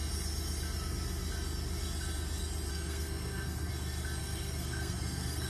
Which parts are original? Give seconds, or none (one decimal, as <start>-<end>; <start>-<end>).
0.0-2.7; 3.7-4.2